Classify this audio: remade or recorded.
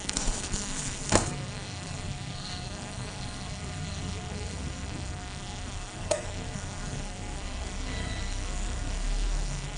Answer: remade